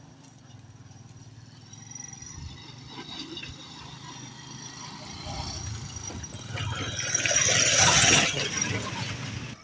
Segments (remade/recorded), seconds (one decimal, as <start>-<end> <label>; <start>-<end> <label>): 0.0-7.7 recorded; 7.7-8.4 remade; 8.4-9.6 recorded